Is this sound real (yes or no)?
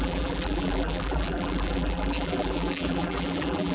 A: no